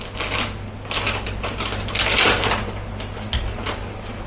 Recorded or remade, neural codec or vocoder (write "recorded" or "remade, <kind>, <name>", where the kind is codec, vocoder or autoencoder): recorded